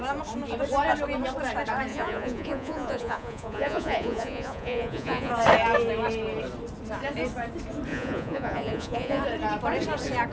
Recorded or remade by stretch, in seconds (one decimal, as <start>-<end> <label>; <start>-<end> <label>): 0.0-1.9 recorded; 1.9-5.3 remade; 5.3-7.9 recorded; 7.9-9.2 remade; 9.2-10.3 recorded